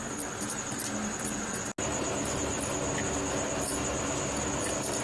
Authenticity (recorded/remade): recorded